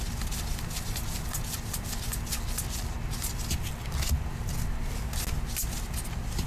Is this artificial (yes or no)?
no